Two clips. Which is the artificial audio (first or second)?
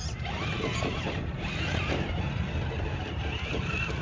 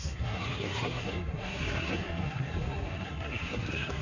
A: second